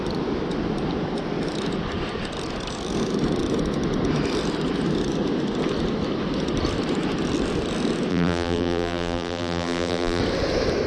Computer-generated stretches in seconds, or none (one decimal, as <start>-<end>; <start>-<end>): 8.1-10.2